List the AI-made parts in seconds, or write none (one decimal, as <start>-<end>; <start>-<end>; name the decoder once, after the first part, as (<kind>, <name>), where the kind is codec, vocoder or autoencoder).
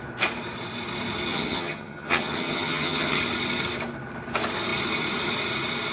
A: 1.3-3.2 (vocoder, HiFi-GAN)